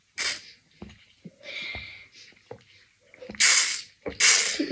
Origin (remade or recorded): recorded